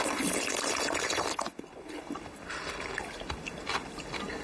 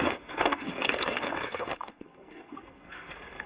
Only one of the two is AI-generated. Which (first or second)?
second